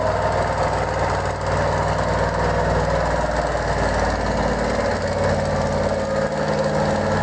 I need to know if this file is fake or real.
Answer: real